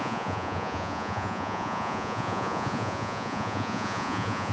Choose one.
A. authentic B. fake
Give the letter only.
B